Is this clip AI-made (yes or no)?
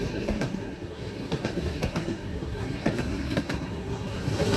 yes